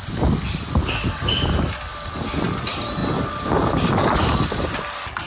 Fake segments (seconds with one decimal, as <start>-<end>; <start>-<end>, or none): none

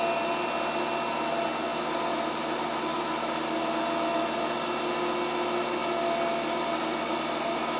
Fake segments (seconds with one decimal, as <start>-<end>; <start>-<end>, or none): none

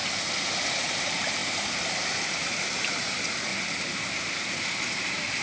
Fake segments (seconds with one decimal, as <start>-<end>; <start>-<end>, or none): 0.9-1.4; 2.3-3.5; 4.0-5.4

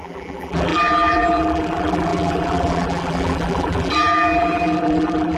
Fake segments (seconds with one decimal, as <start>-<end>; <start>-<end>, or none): 0.0-5.4

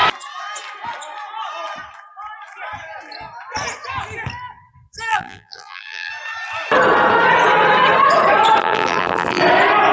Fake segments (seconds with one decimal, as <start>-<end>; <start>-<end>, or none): 5.1-6.1; 8.6-9.4

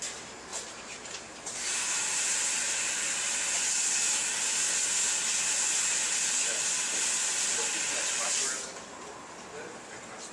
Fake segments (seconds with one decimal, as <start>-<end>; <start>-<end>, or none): 0.5-2.9

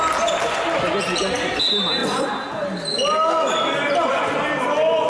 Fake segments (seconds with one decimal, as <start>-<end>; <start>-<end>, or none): none

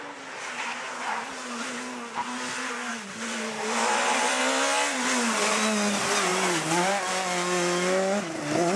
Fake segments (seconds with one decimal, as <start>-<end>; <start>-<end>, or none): 2.9-4.4; 6.3-7.1